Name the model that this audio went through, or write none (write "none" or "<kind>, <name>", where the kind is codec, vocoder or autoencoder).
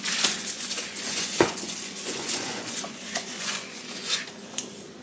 vocoder, Vocos